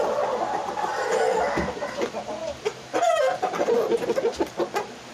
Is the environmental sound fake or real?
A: real